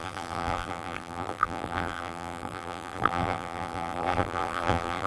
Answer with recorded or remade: remade